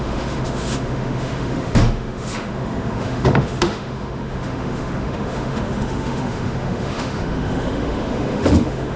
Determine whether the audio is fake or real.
fake